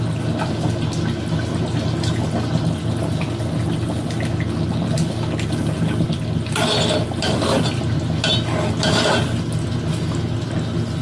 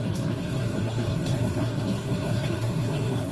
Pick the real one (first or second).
first